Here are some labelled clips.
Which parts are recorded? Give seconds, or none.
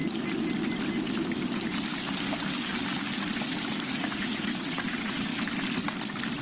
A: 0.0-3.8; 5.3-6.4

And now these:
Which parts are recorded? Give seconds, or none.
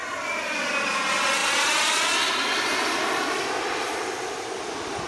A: 0.0-5.1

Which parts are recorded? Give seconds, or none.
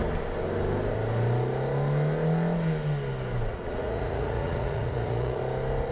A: 0.0-3.5; 5.4-5.9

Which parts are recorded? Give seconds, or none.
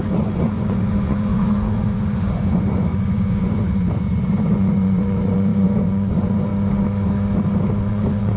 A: 6.5-7.9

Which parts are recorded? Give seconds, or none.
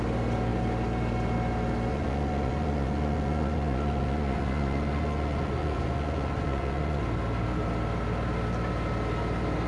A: 0.0-1.9; 7.0-9.7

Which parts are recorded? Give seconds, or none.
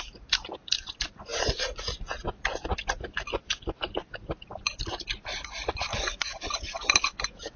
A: 0.0-7.6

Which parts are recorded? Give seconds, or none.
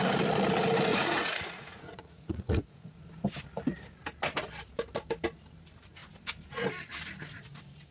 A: 0.0-0.9; 3.1-7.9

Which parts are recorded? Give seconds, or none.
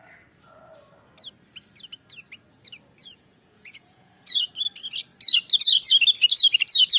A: 0.0-3.0; 4.5-7.0